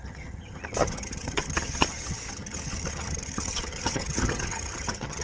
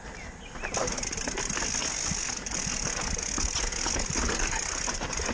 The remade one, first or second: first